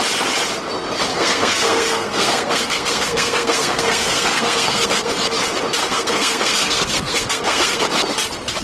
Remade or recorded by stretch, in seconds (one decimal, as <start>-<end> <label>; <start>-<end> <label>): 0.0-1.1 recorded; 1.1-5.1 remade; 5.1-5.8 recorded; 5.8-7.8 remade; 7.8-8.6 recorded

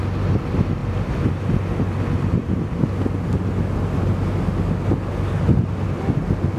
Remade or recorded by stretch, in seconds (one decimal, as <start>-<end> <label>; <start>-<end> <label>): 0.0-6.6 recorded